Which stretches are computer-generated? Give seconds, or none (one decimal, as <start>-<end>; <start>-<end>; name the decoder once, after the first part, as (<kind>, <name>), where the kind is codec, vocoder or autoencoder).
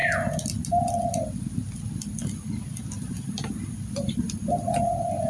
none